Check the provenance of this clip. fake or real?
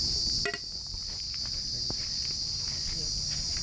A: real